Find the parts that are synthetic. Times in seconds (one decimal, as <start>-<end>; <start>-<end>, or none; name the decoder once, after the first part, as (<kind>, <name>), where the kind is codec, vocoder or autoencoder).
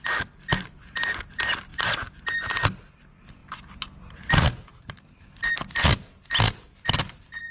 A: 1.7-2.3 (vocoder, BigVGAN v2); 3.4-5.5